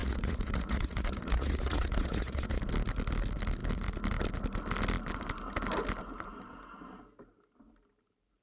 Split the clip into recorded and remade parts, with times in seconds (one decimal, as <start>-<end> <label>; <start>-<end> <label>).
0.0-2.6 remade; 2.6-8.4 recorded